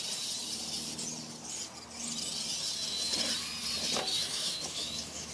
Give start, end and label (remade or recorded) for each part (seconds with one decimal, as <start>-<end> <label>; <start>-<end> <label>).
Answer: 0.0-4.1 recorded; 4.1-5.3 remade